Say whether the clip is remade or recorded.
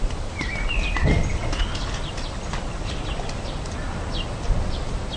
recorded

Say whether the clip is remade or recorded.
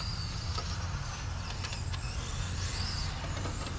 recorded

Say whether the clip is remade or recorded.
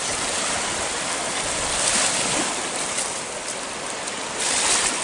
recorded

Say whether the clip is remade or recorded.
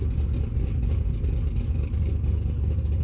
recorded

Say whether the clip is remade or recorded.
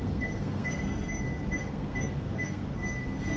remade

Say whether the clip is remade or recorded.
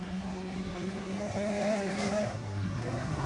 remade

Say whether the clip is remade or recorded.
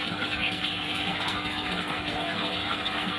remade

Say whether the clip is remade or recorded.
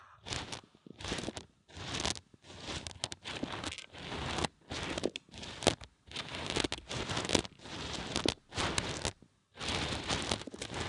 recorded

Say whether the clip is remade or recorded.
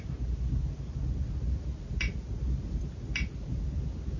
recorded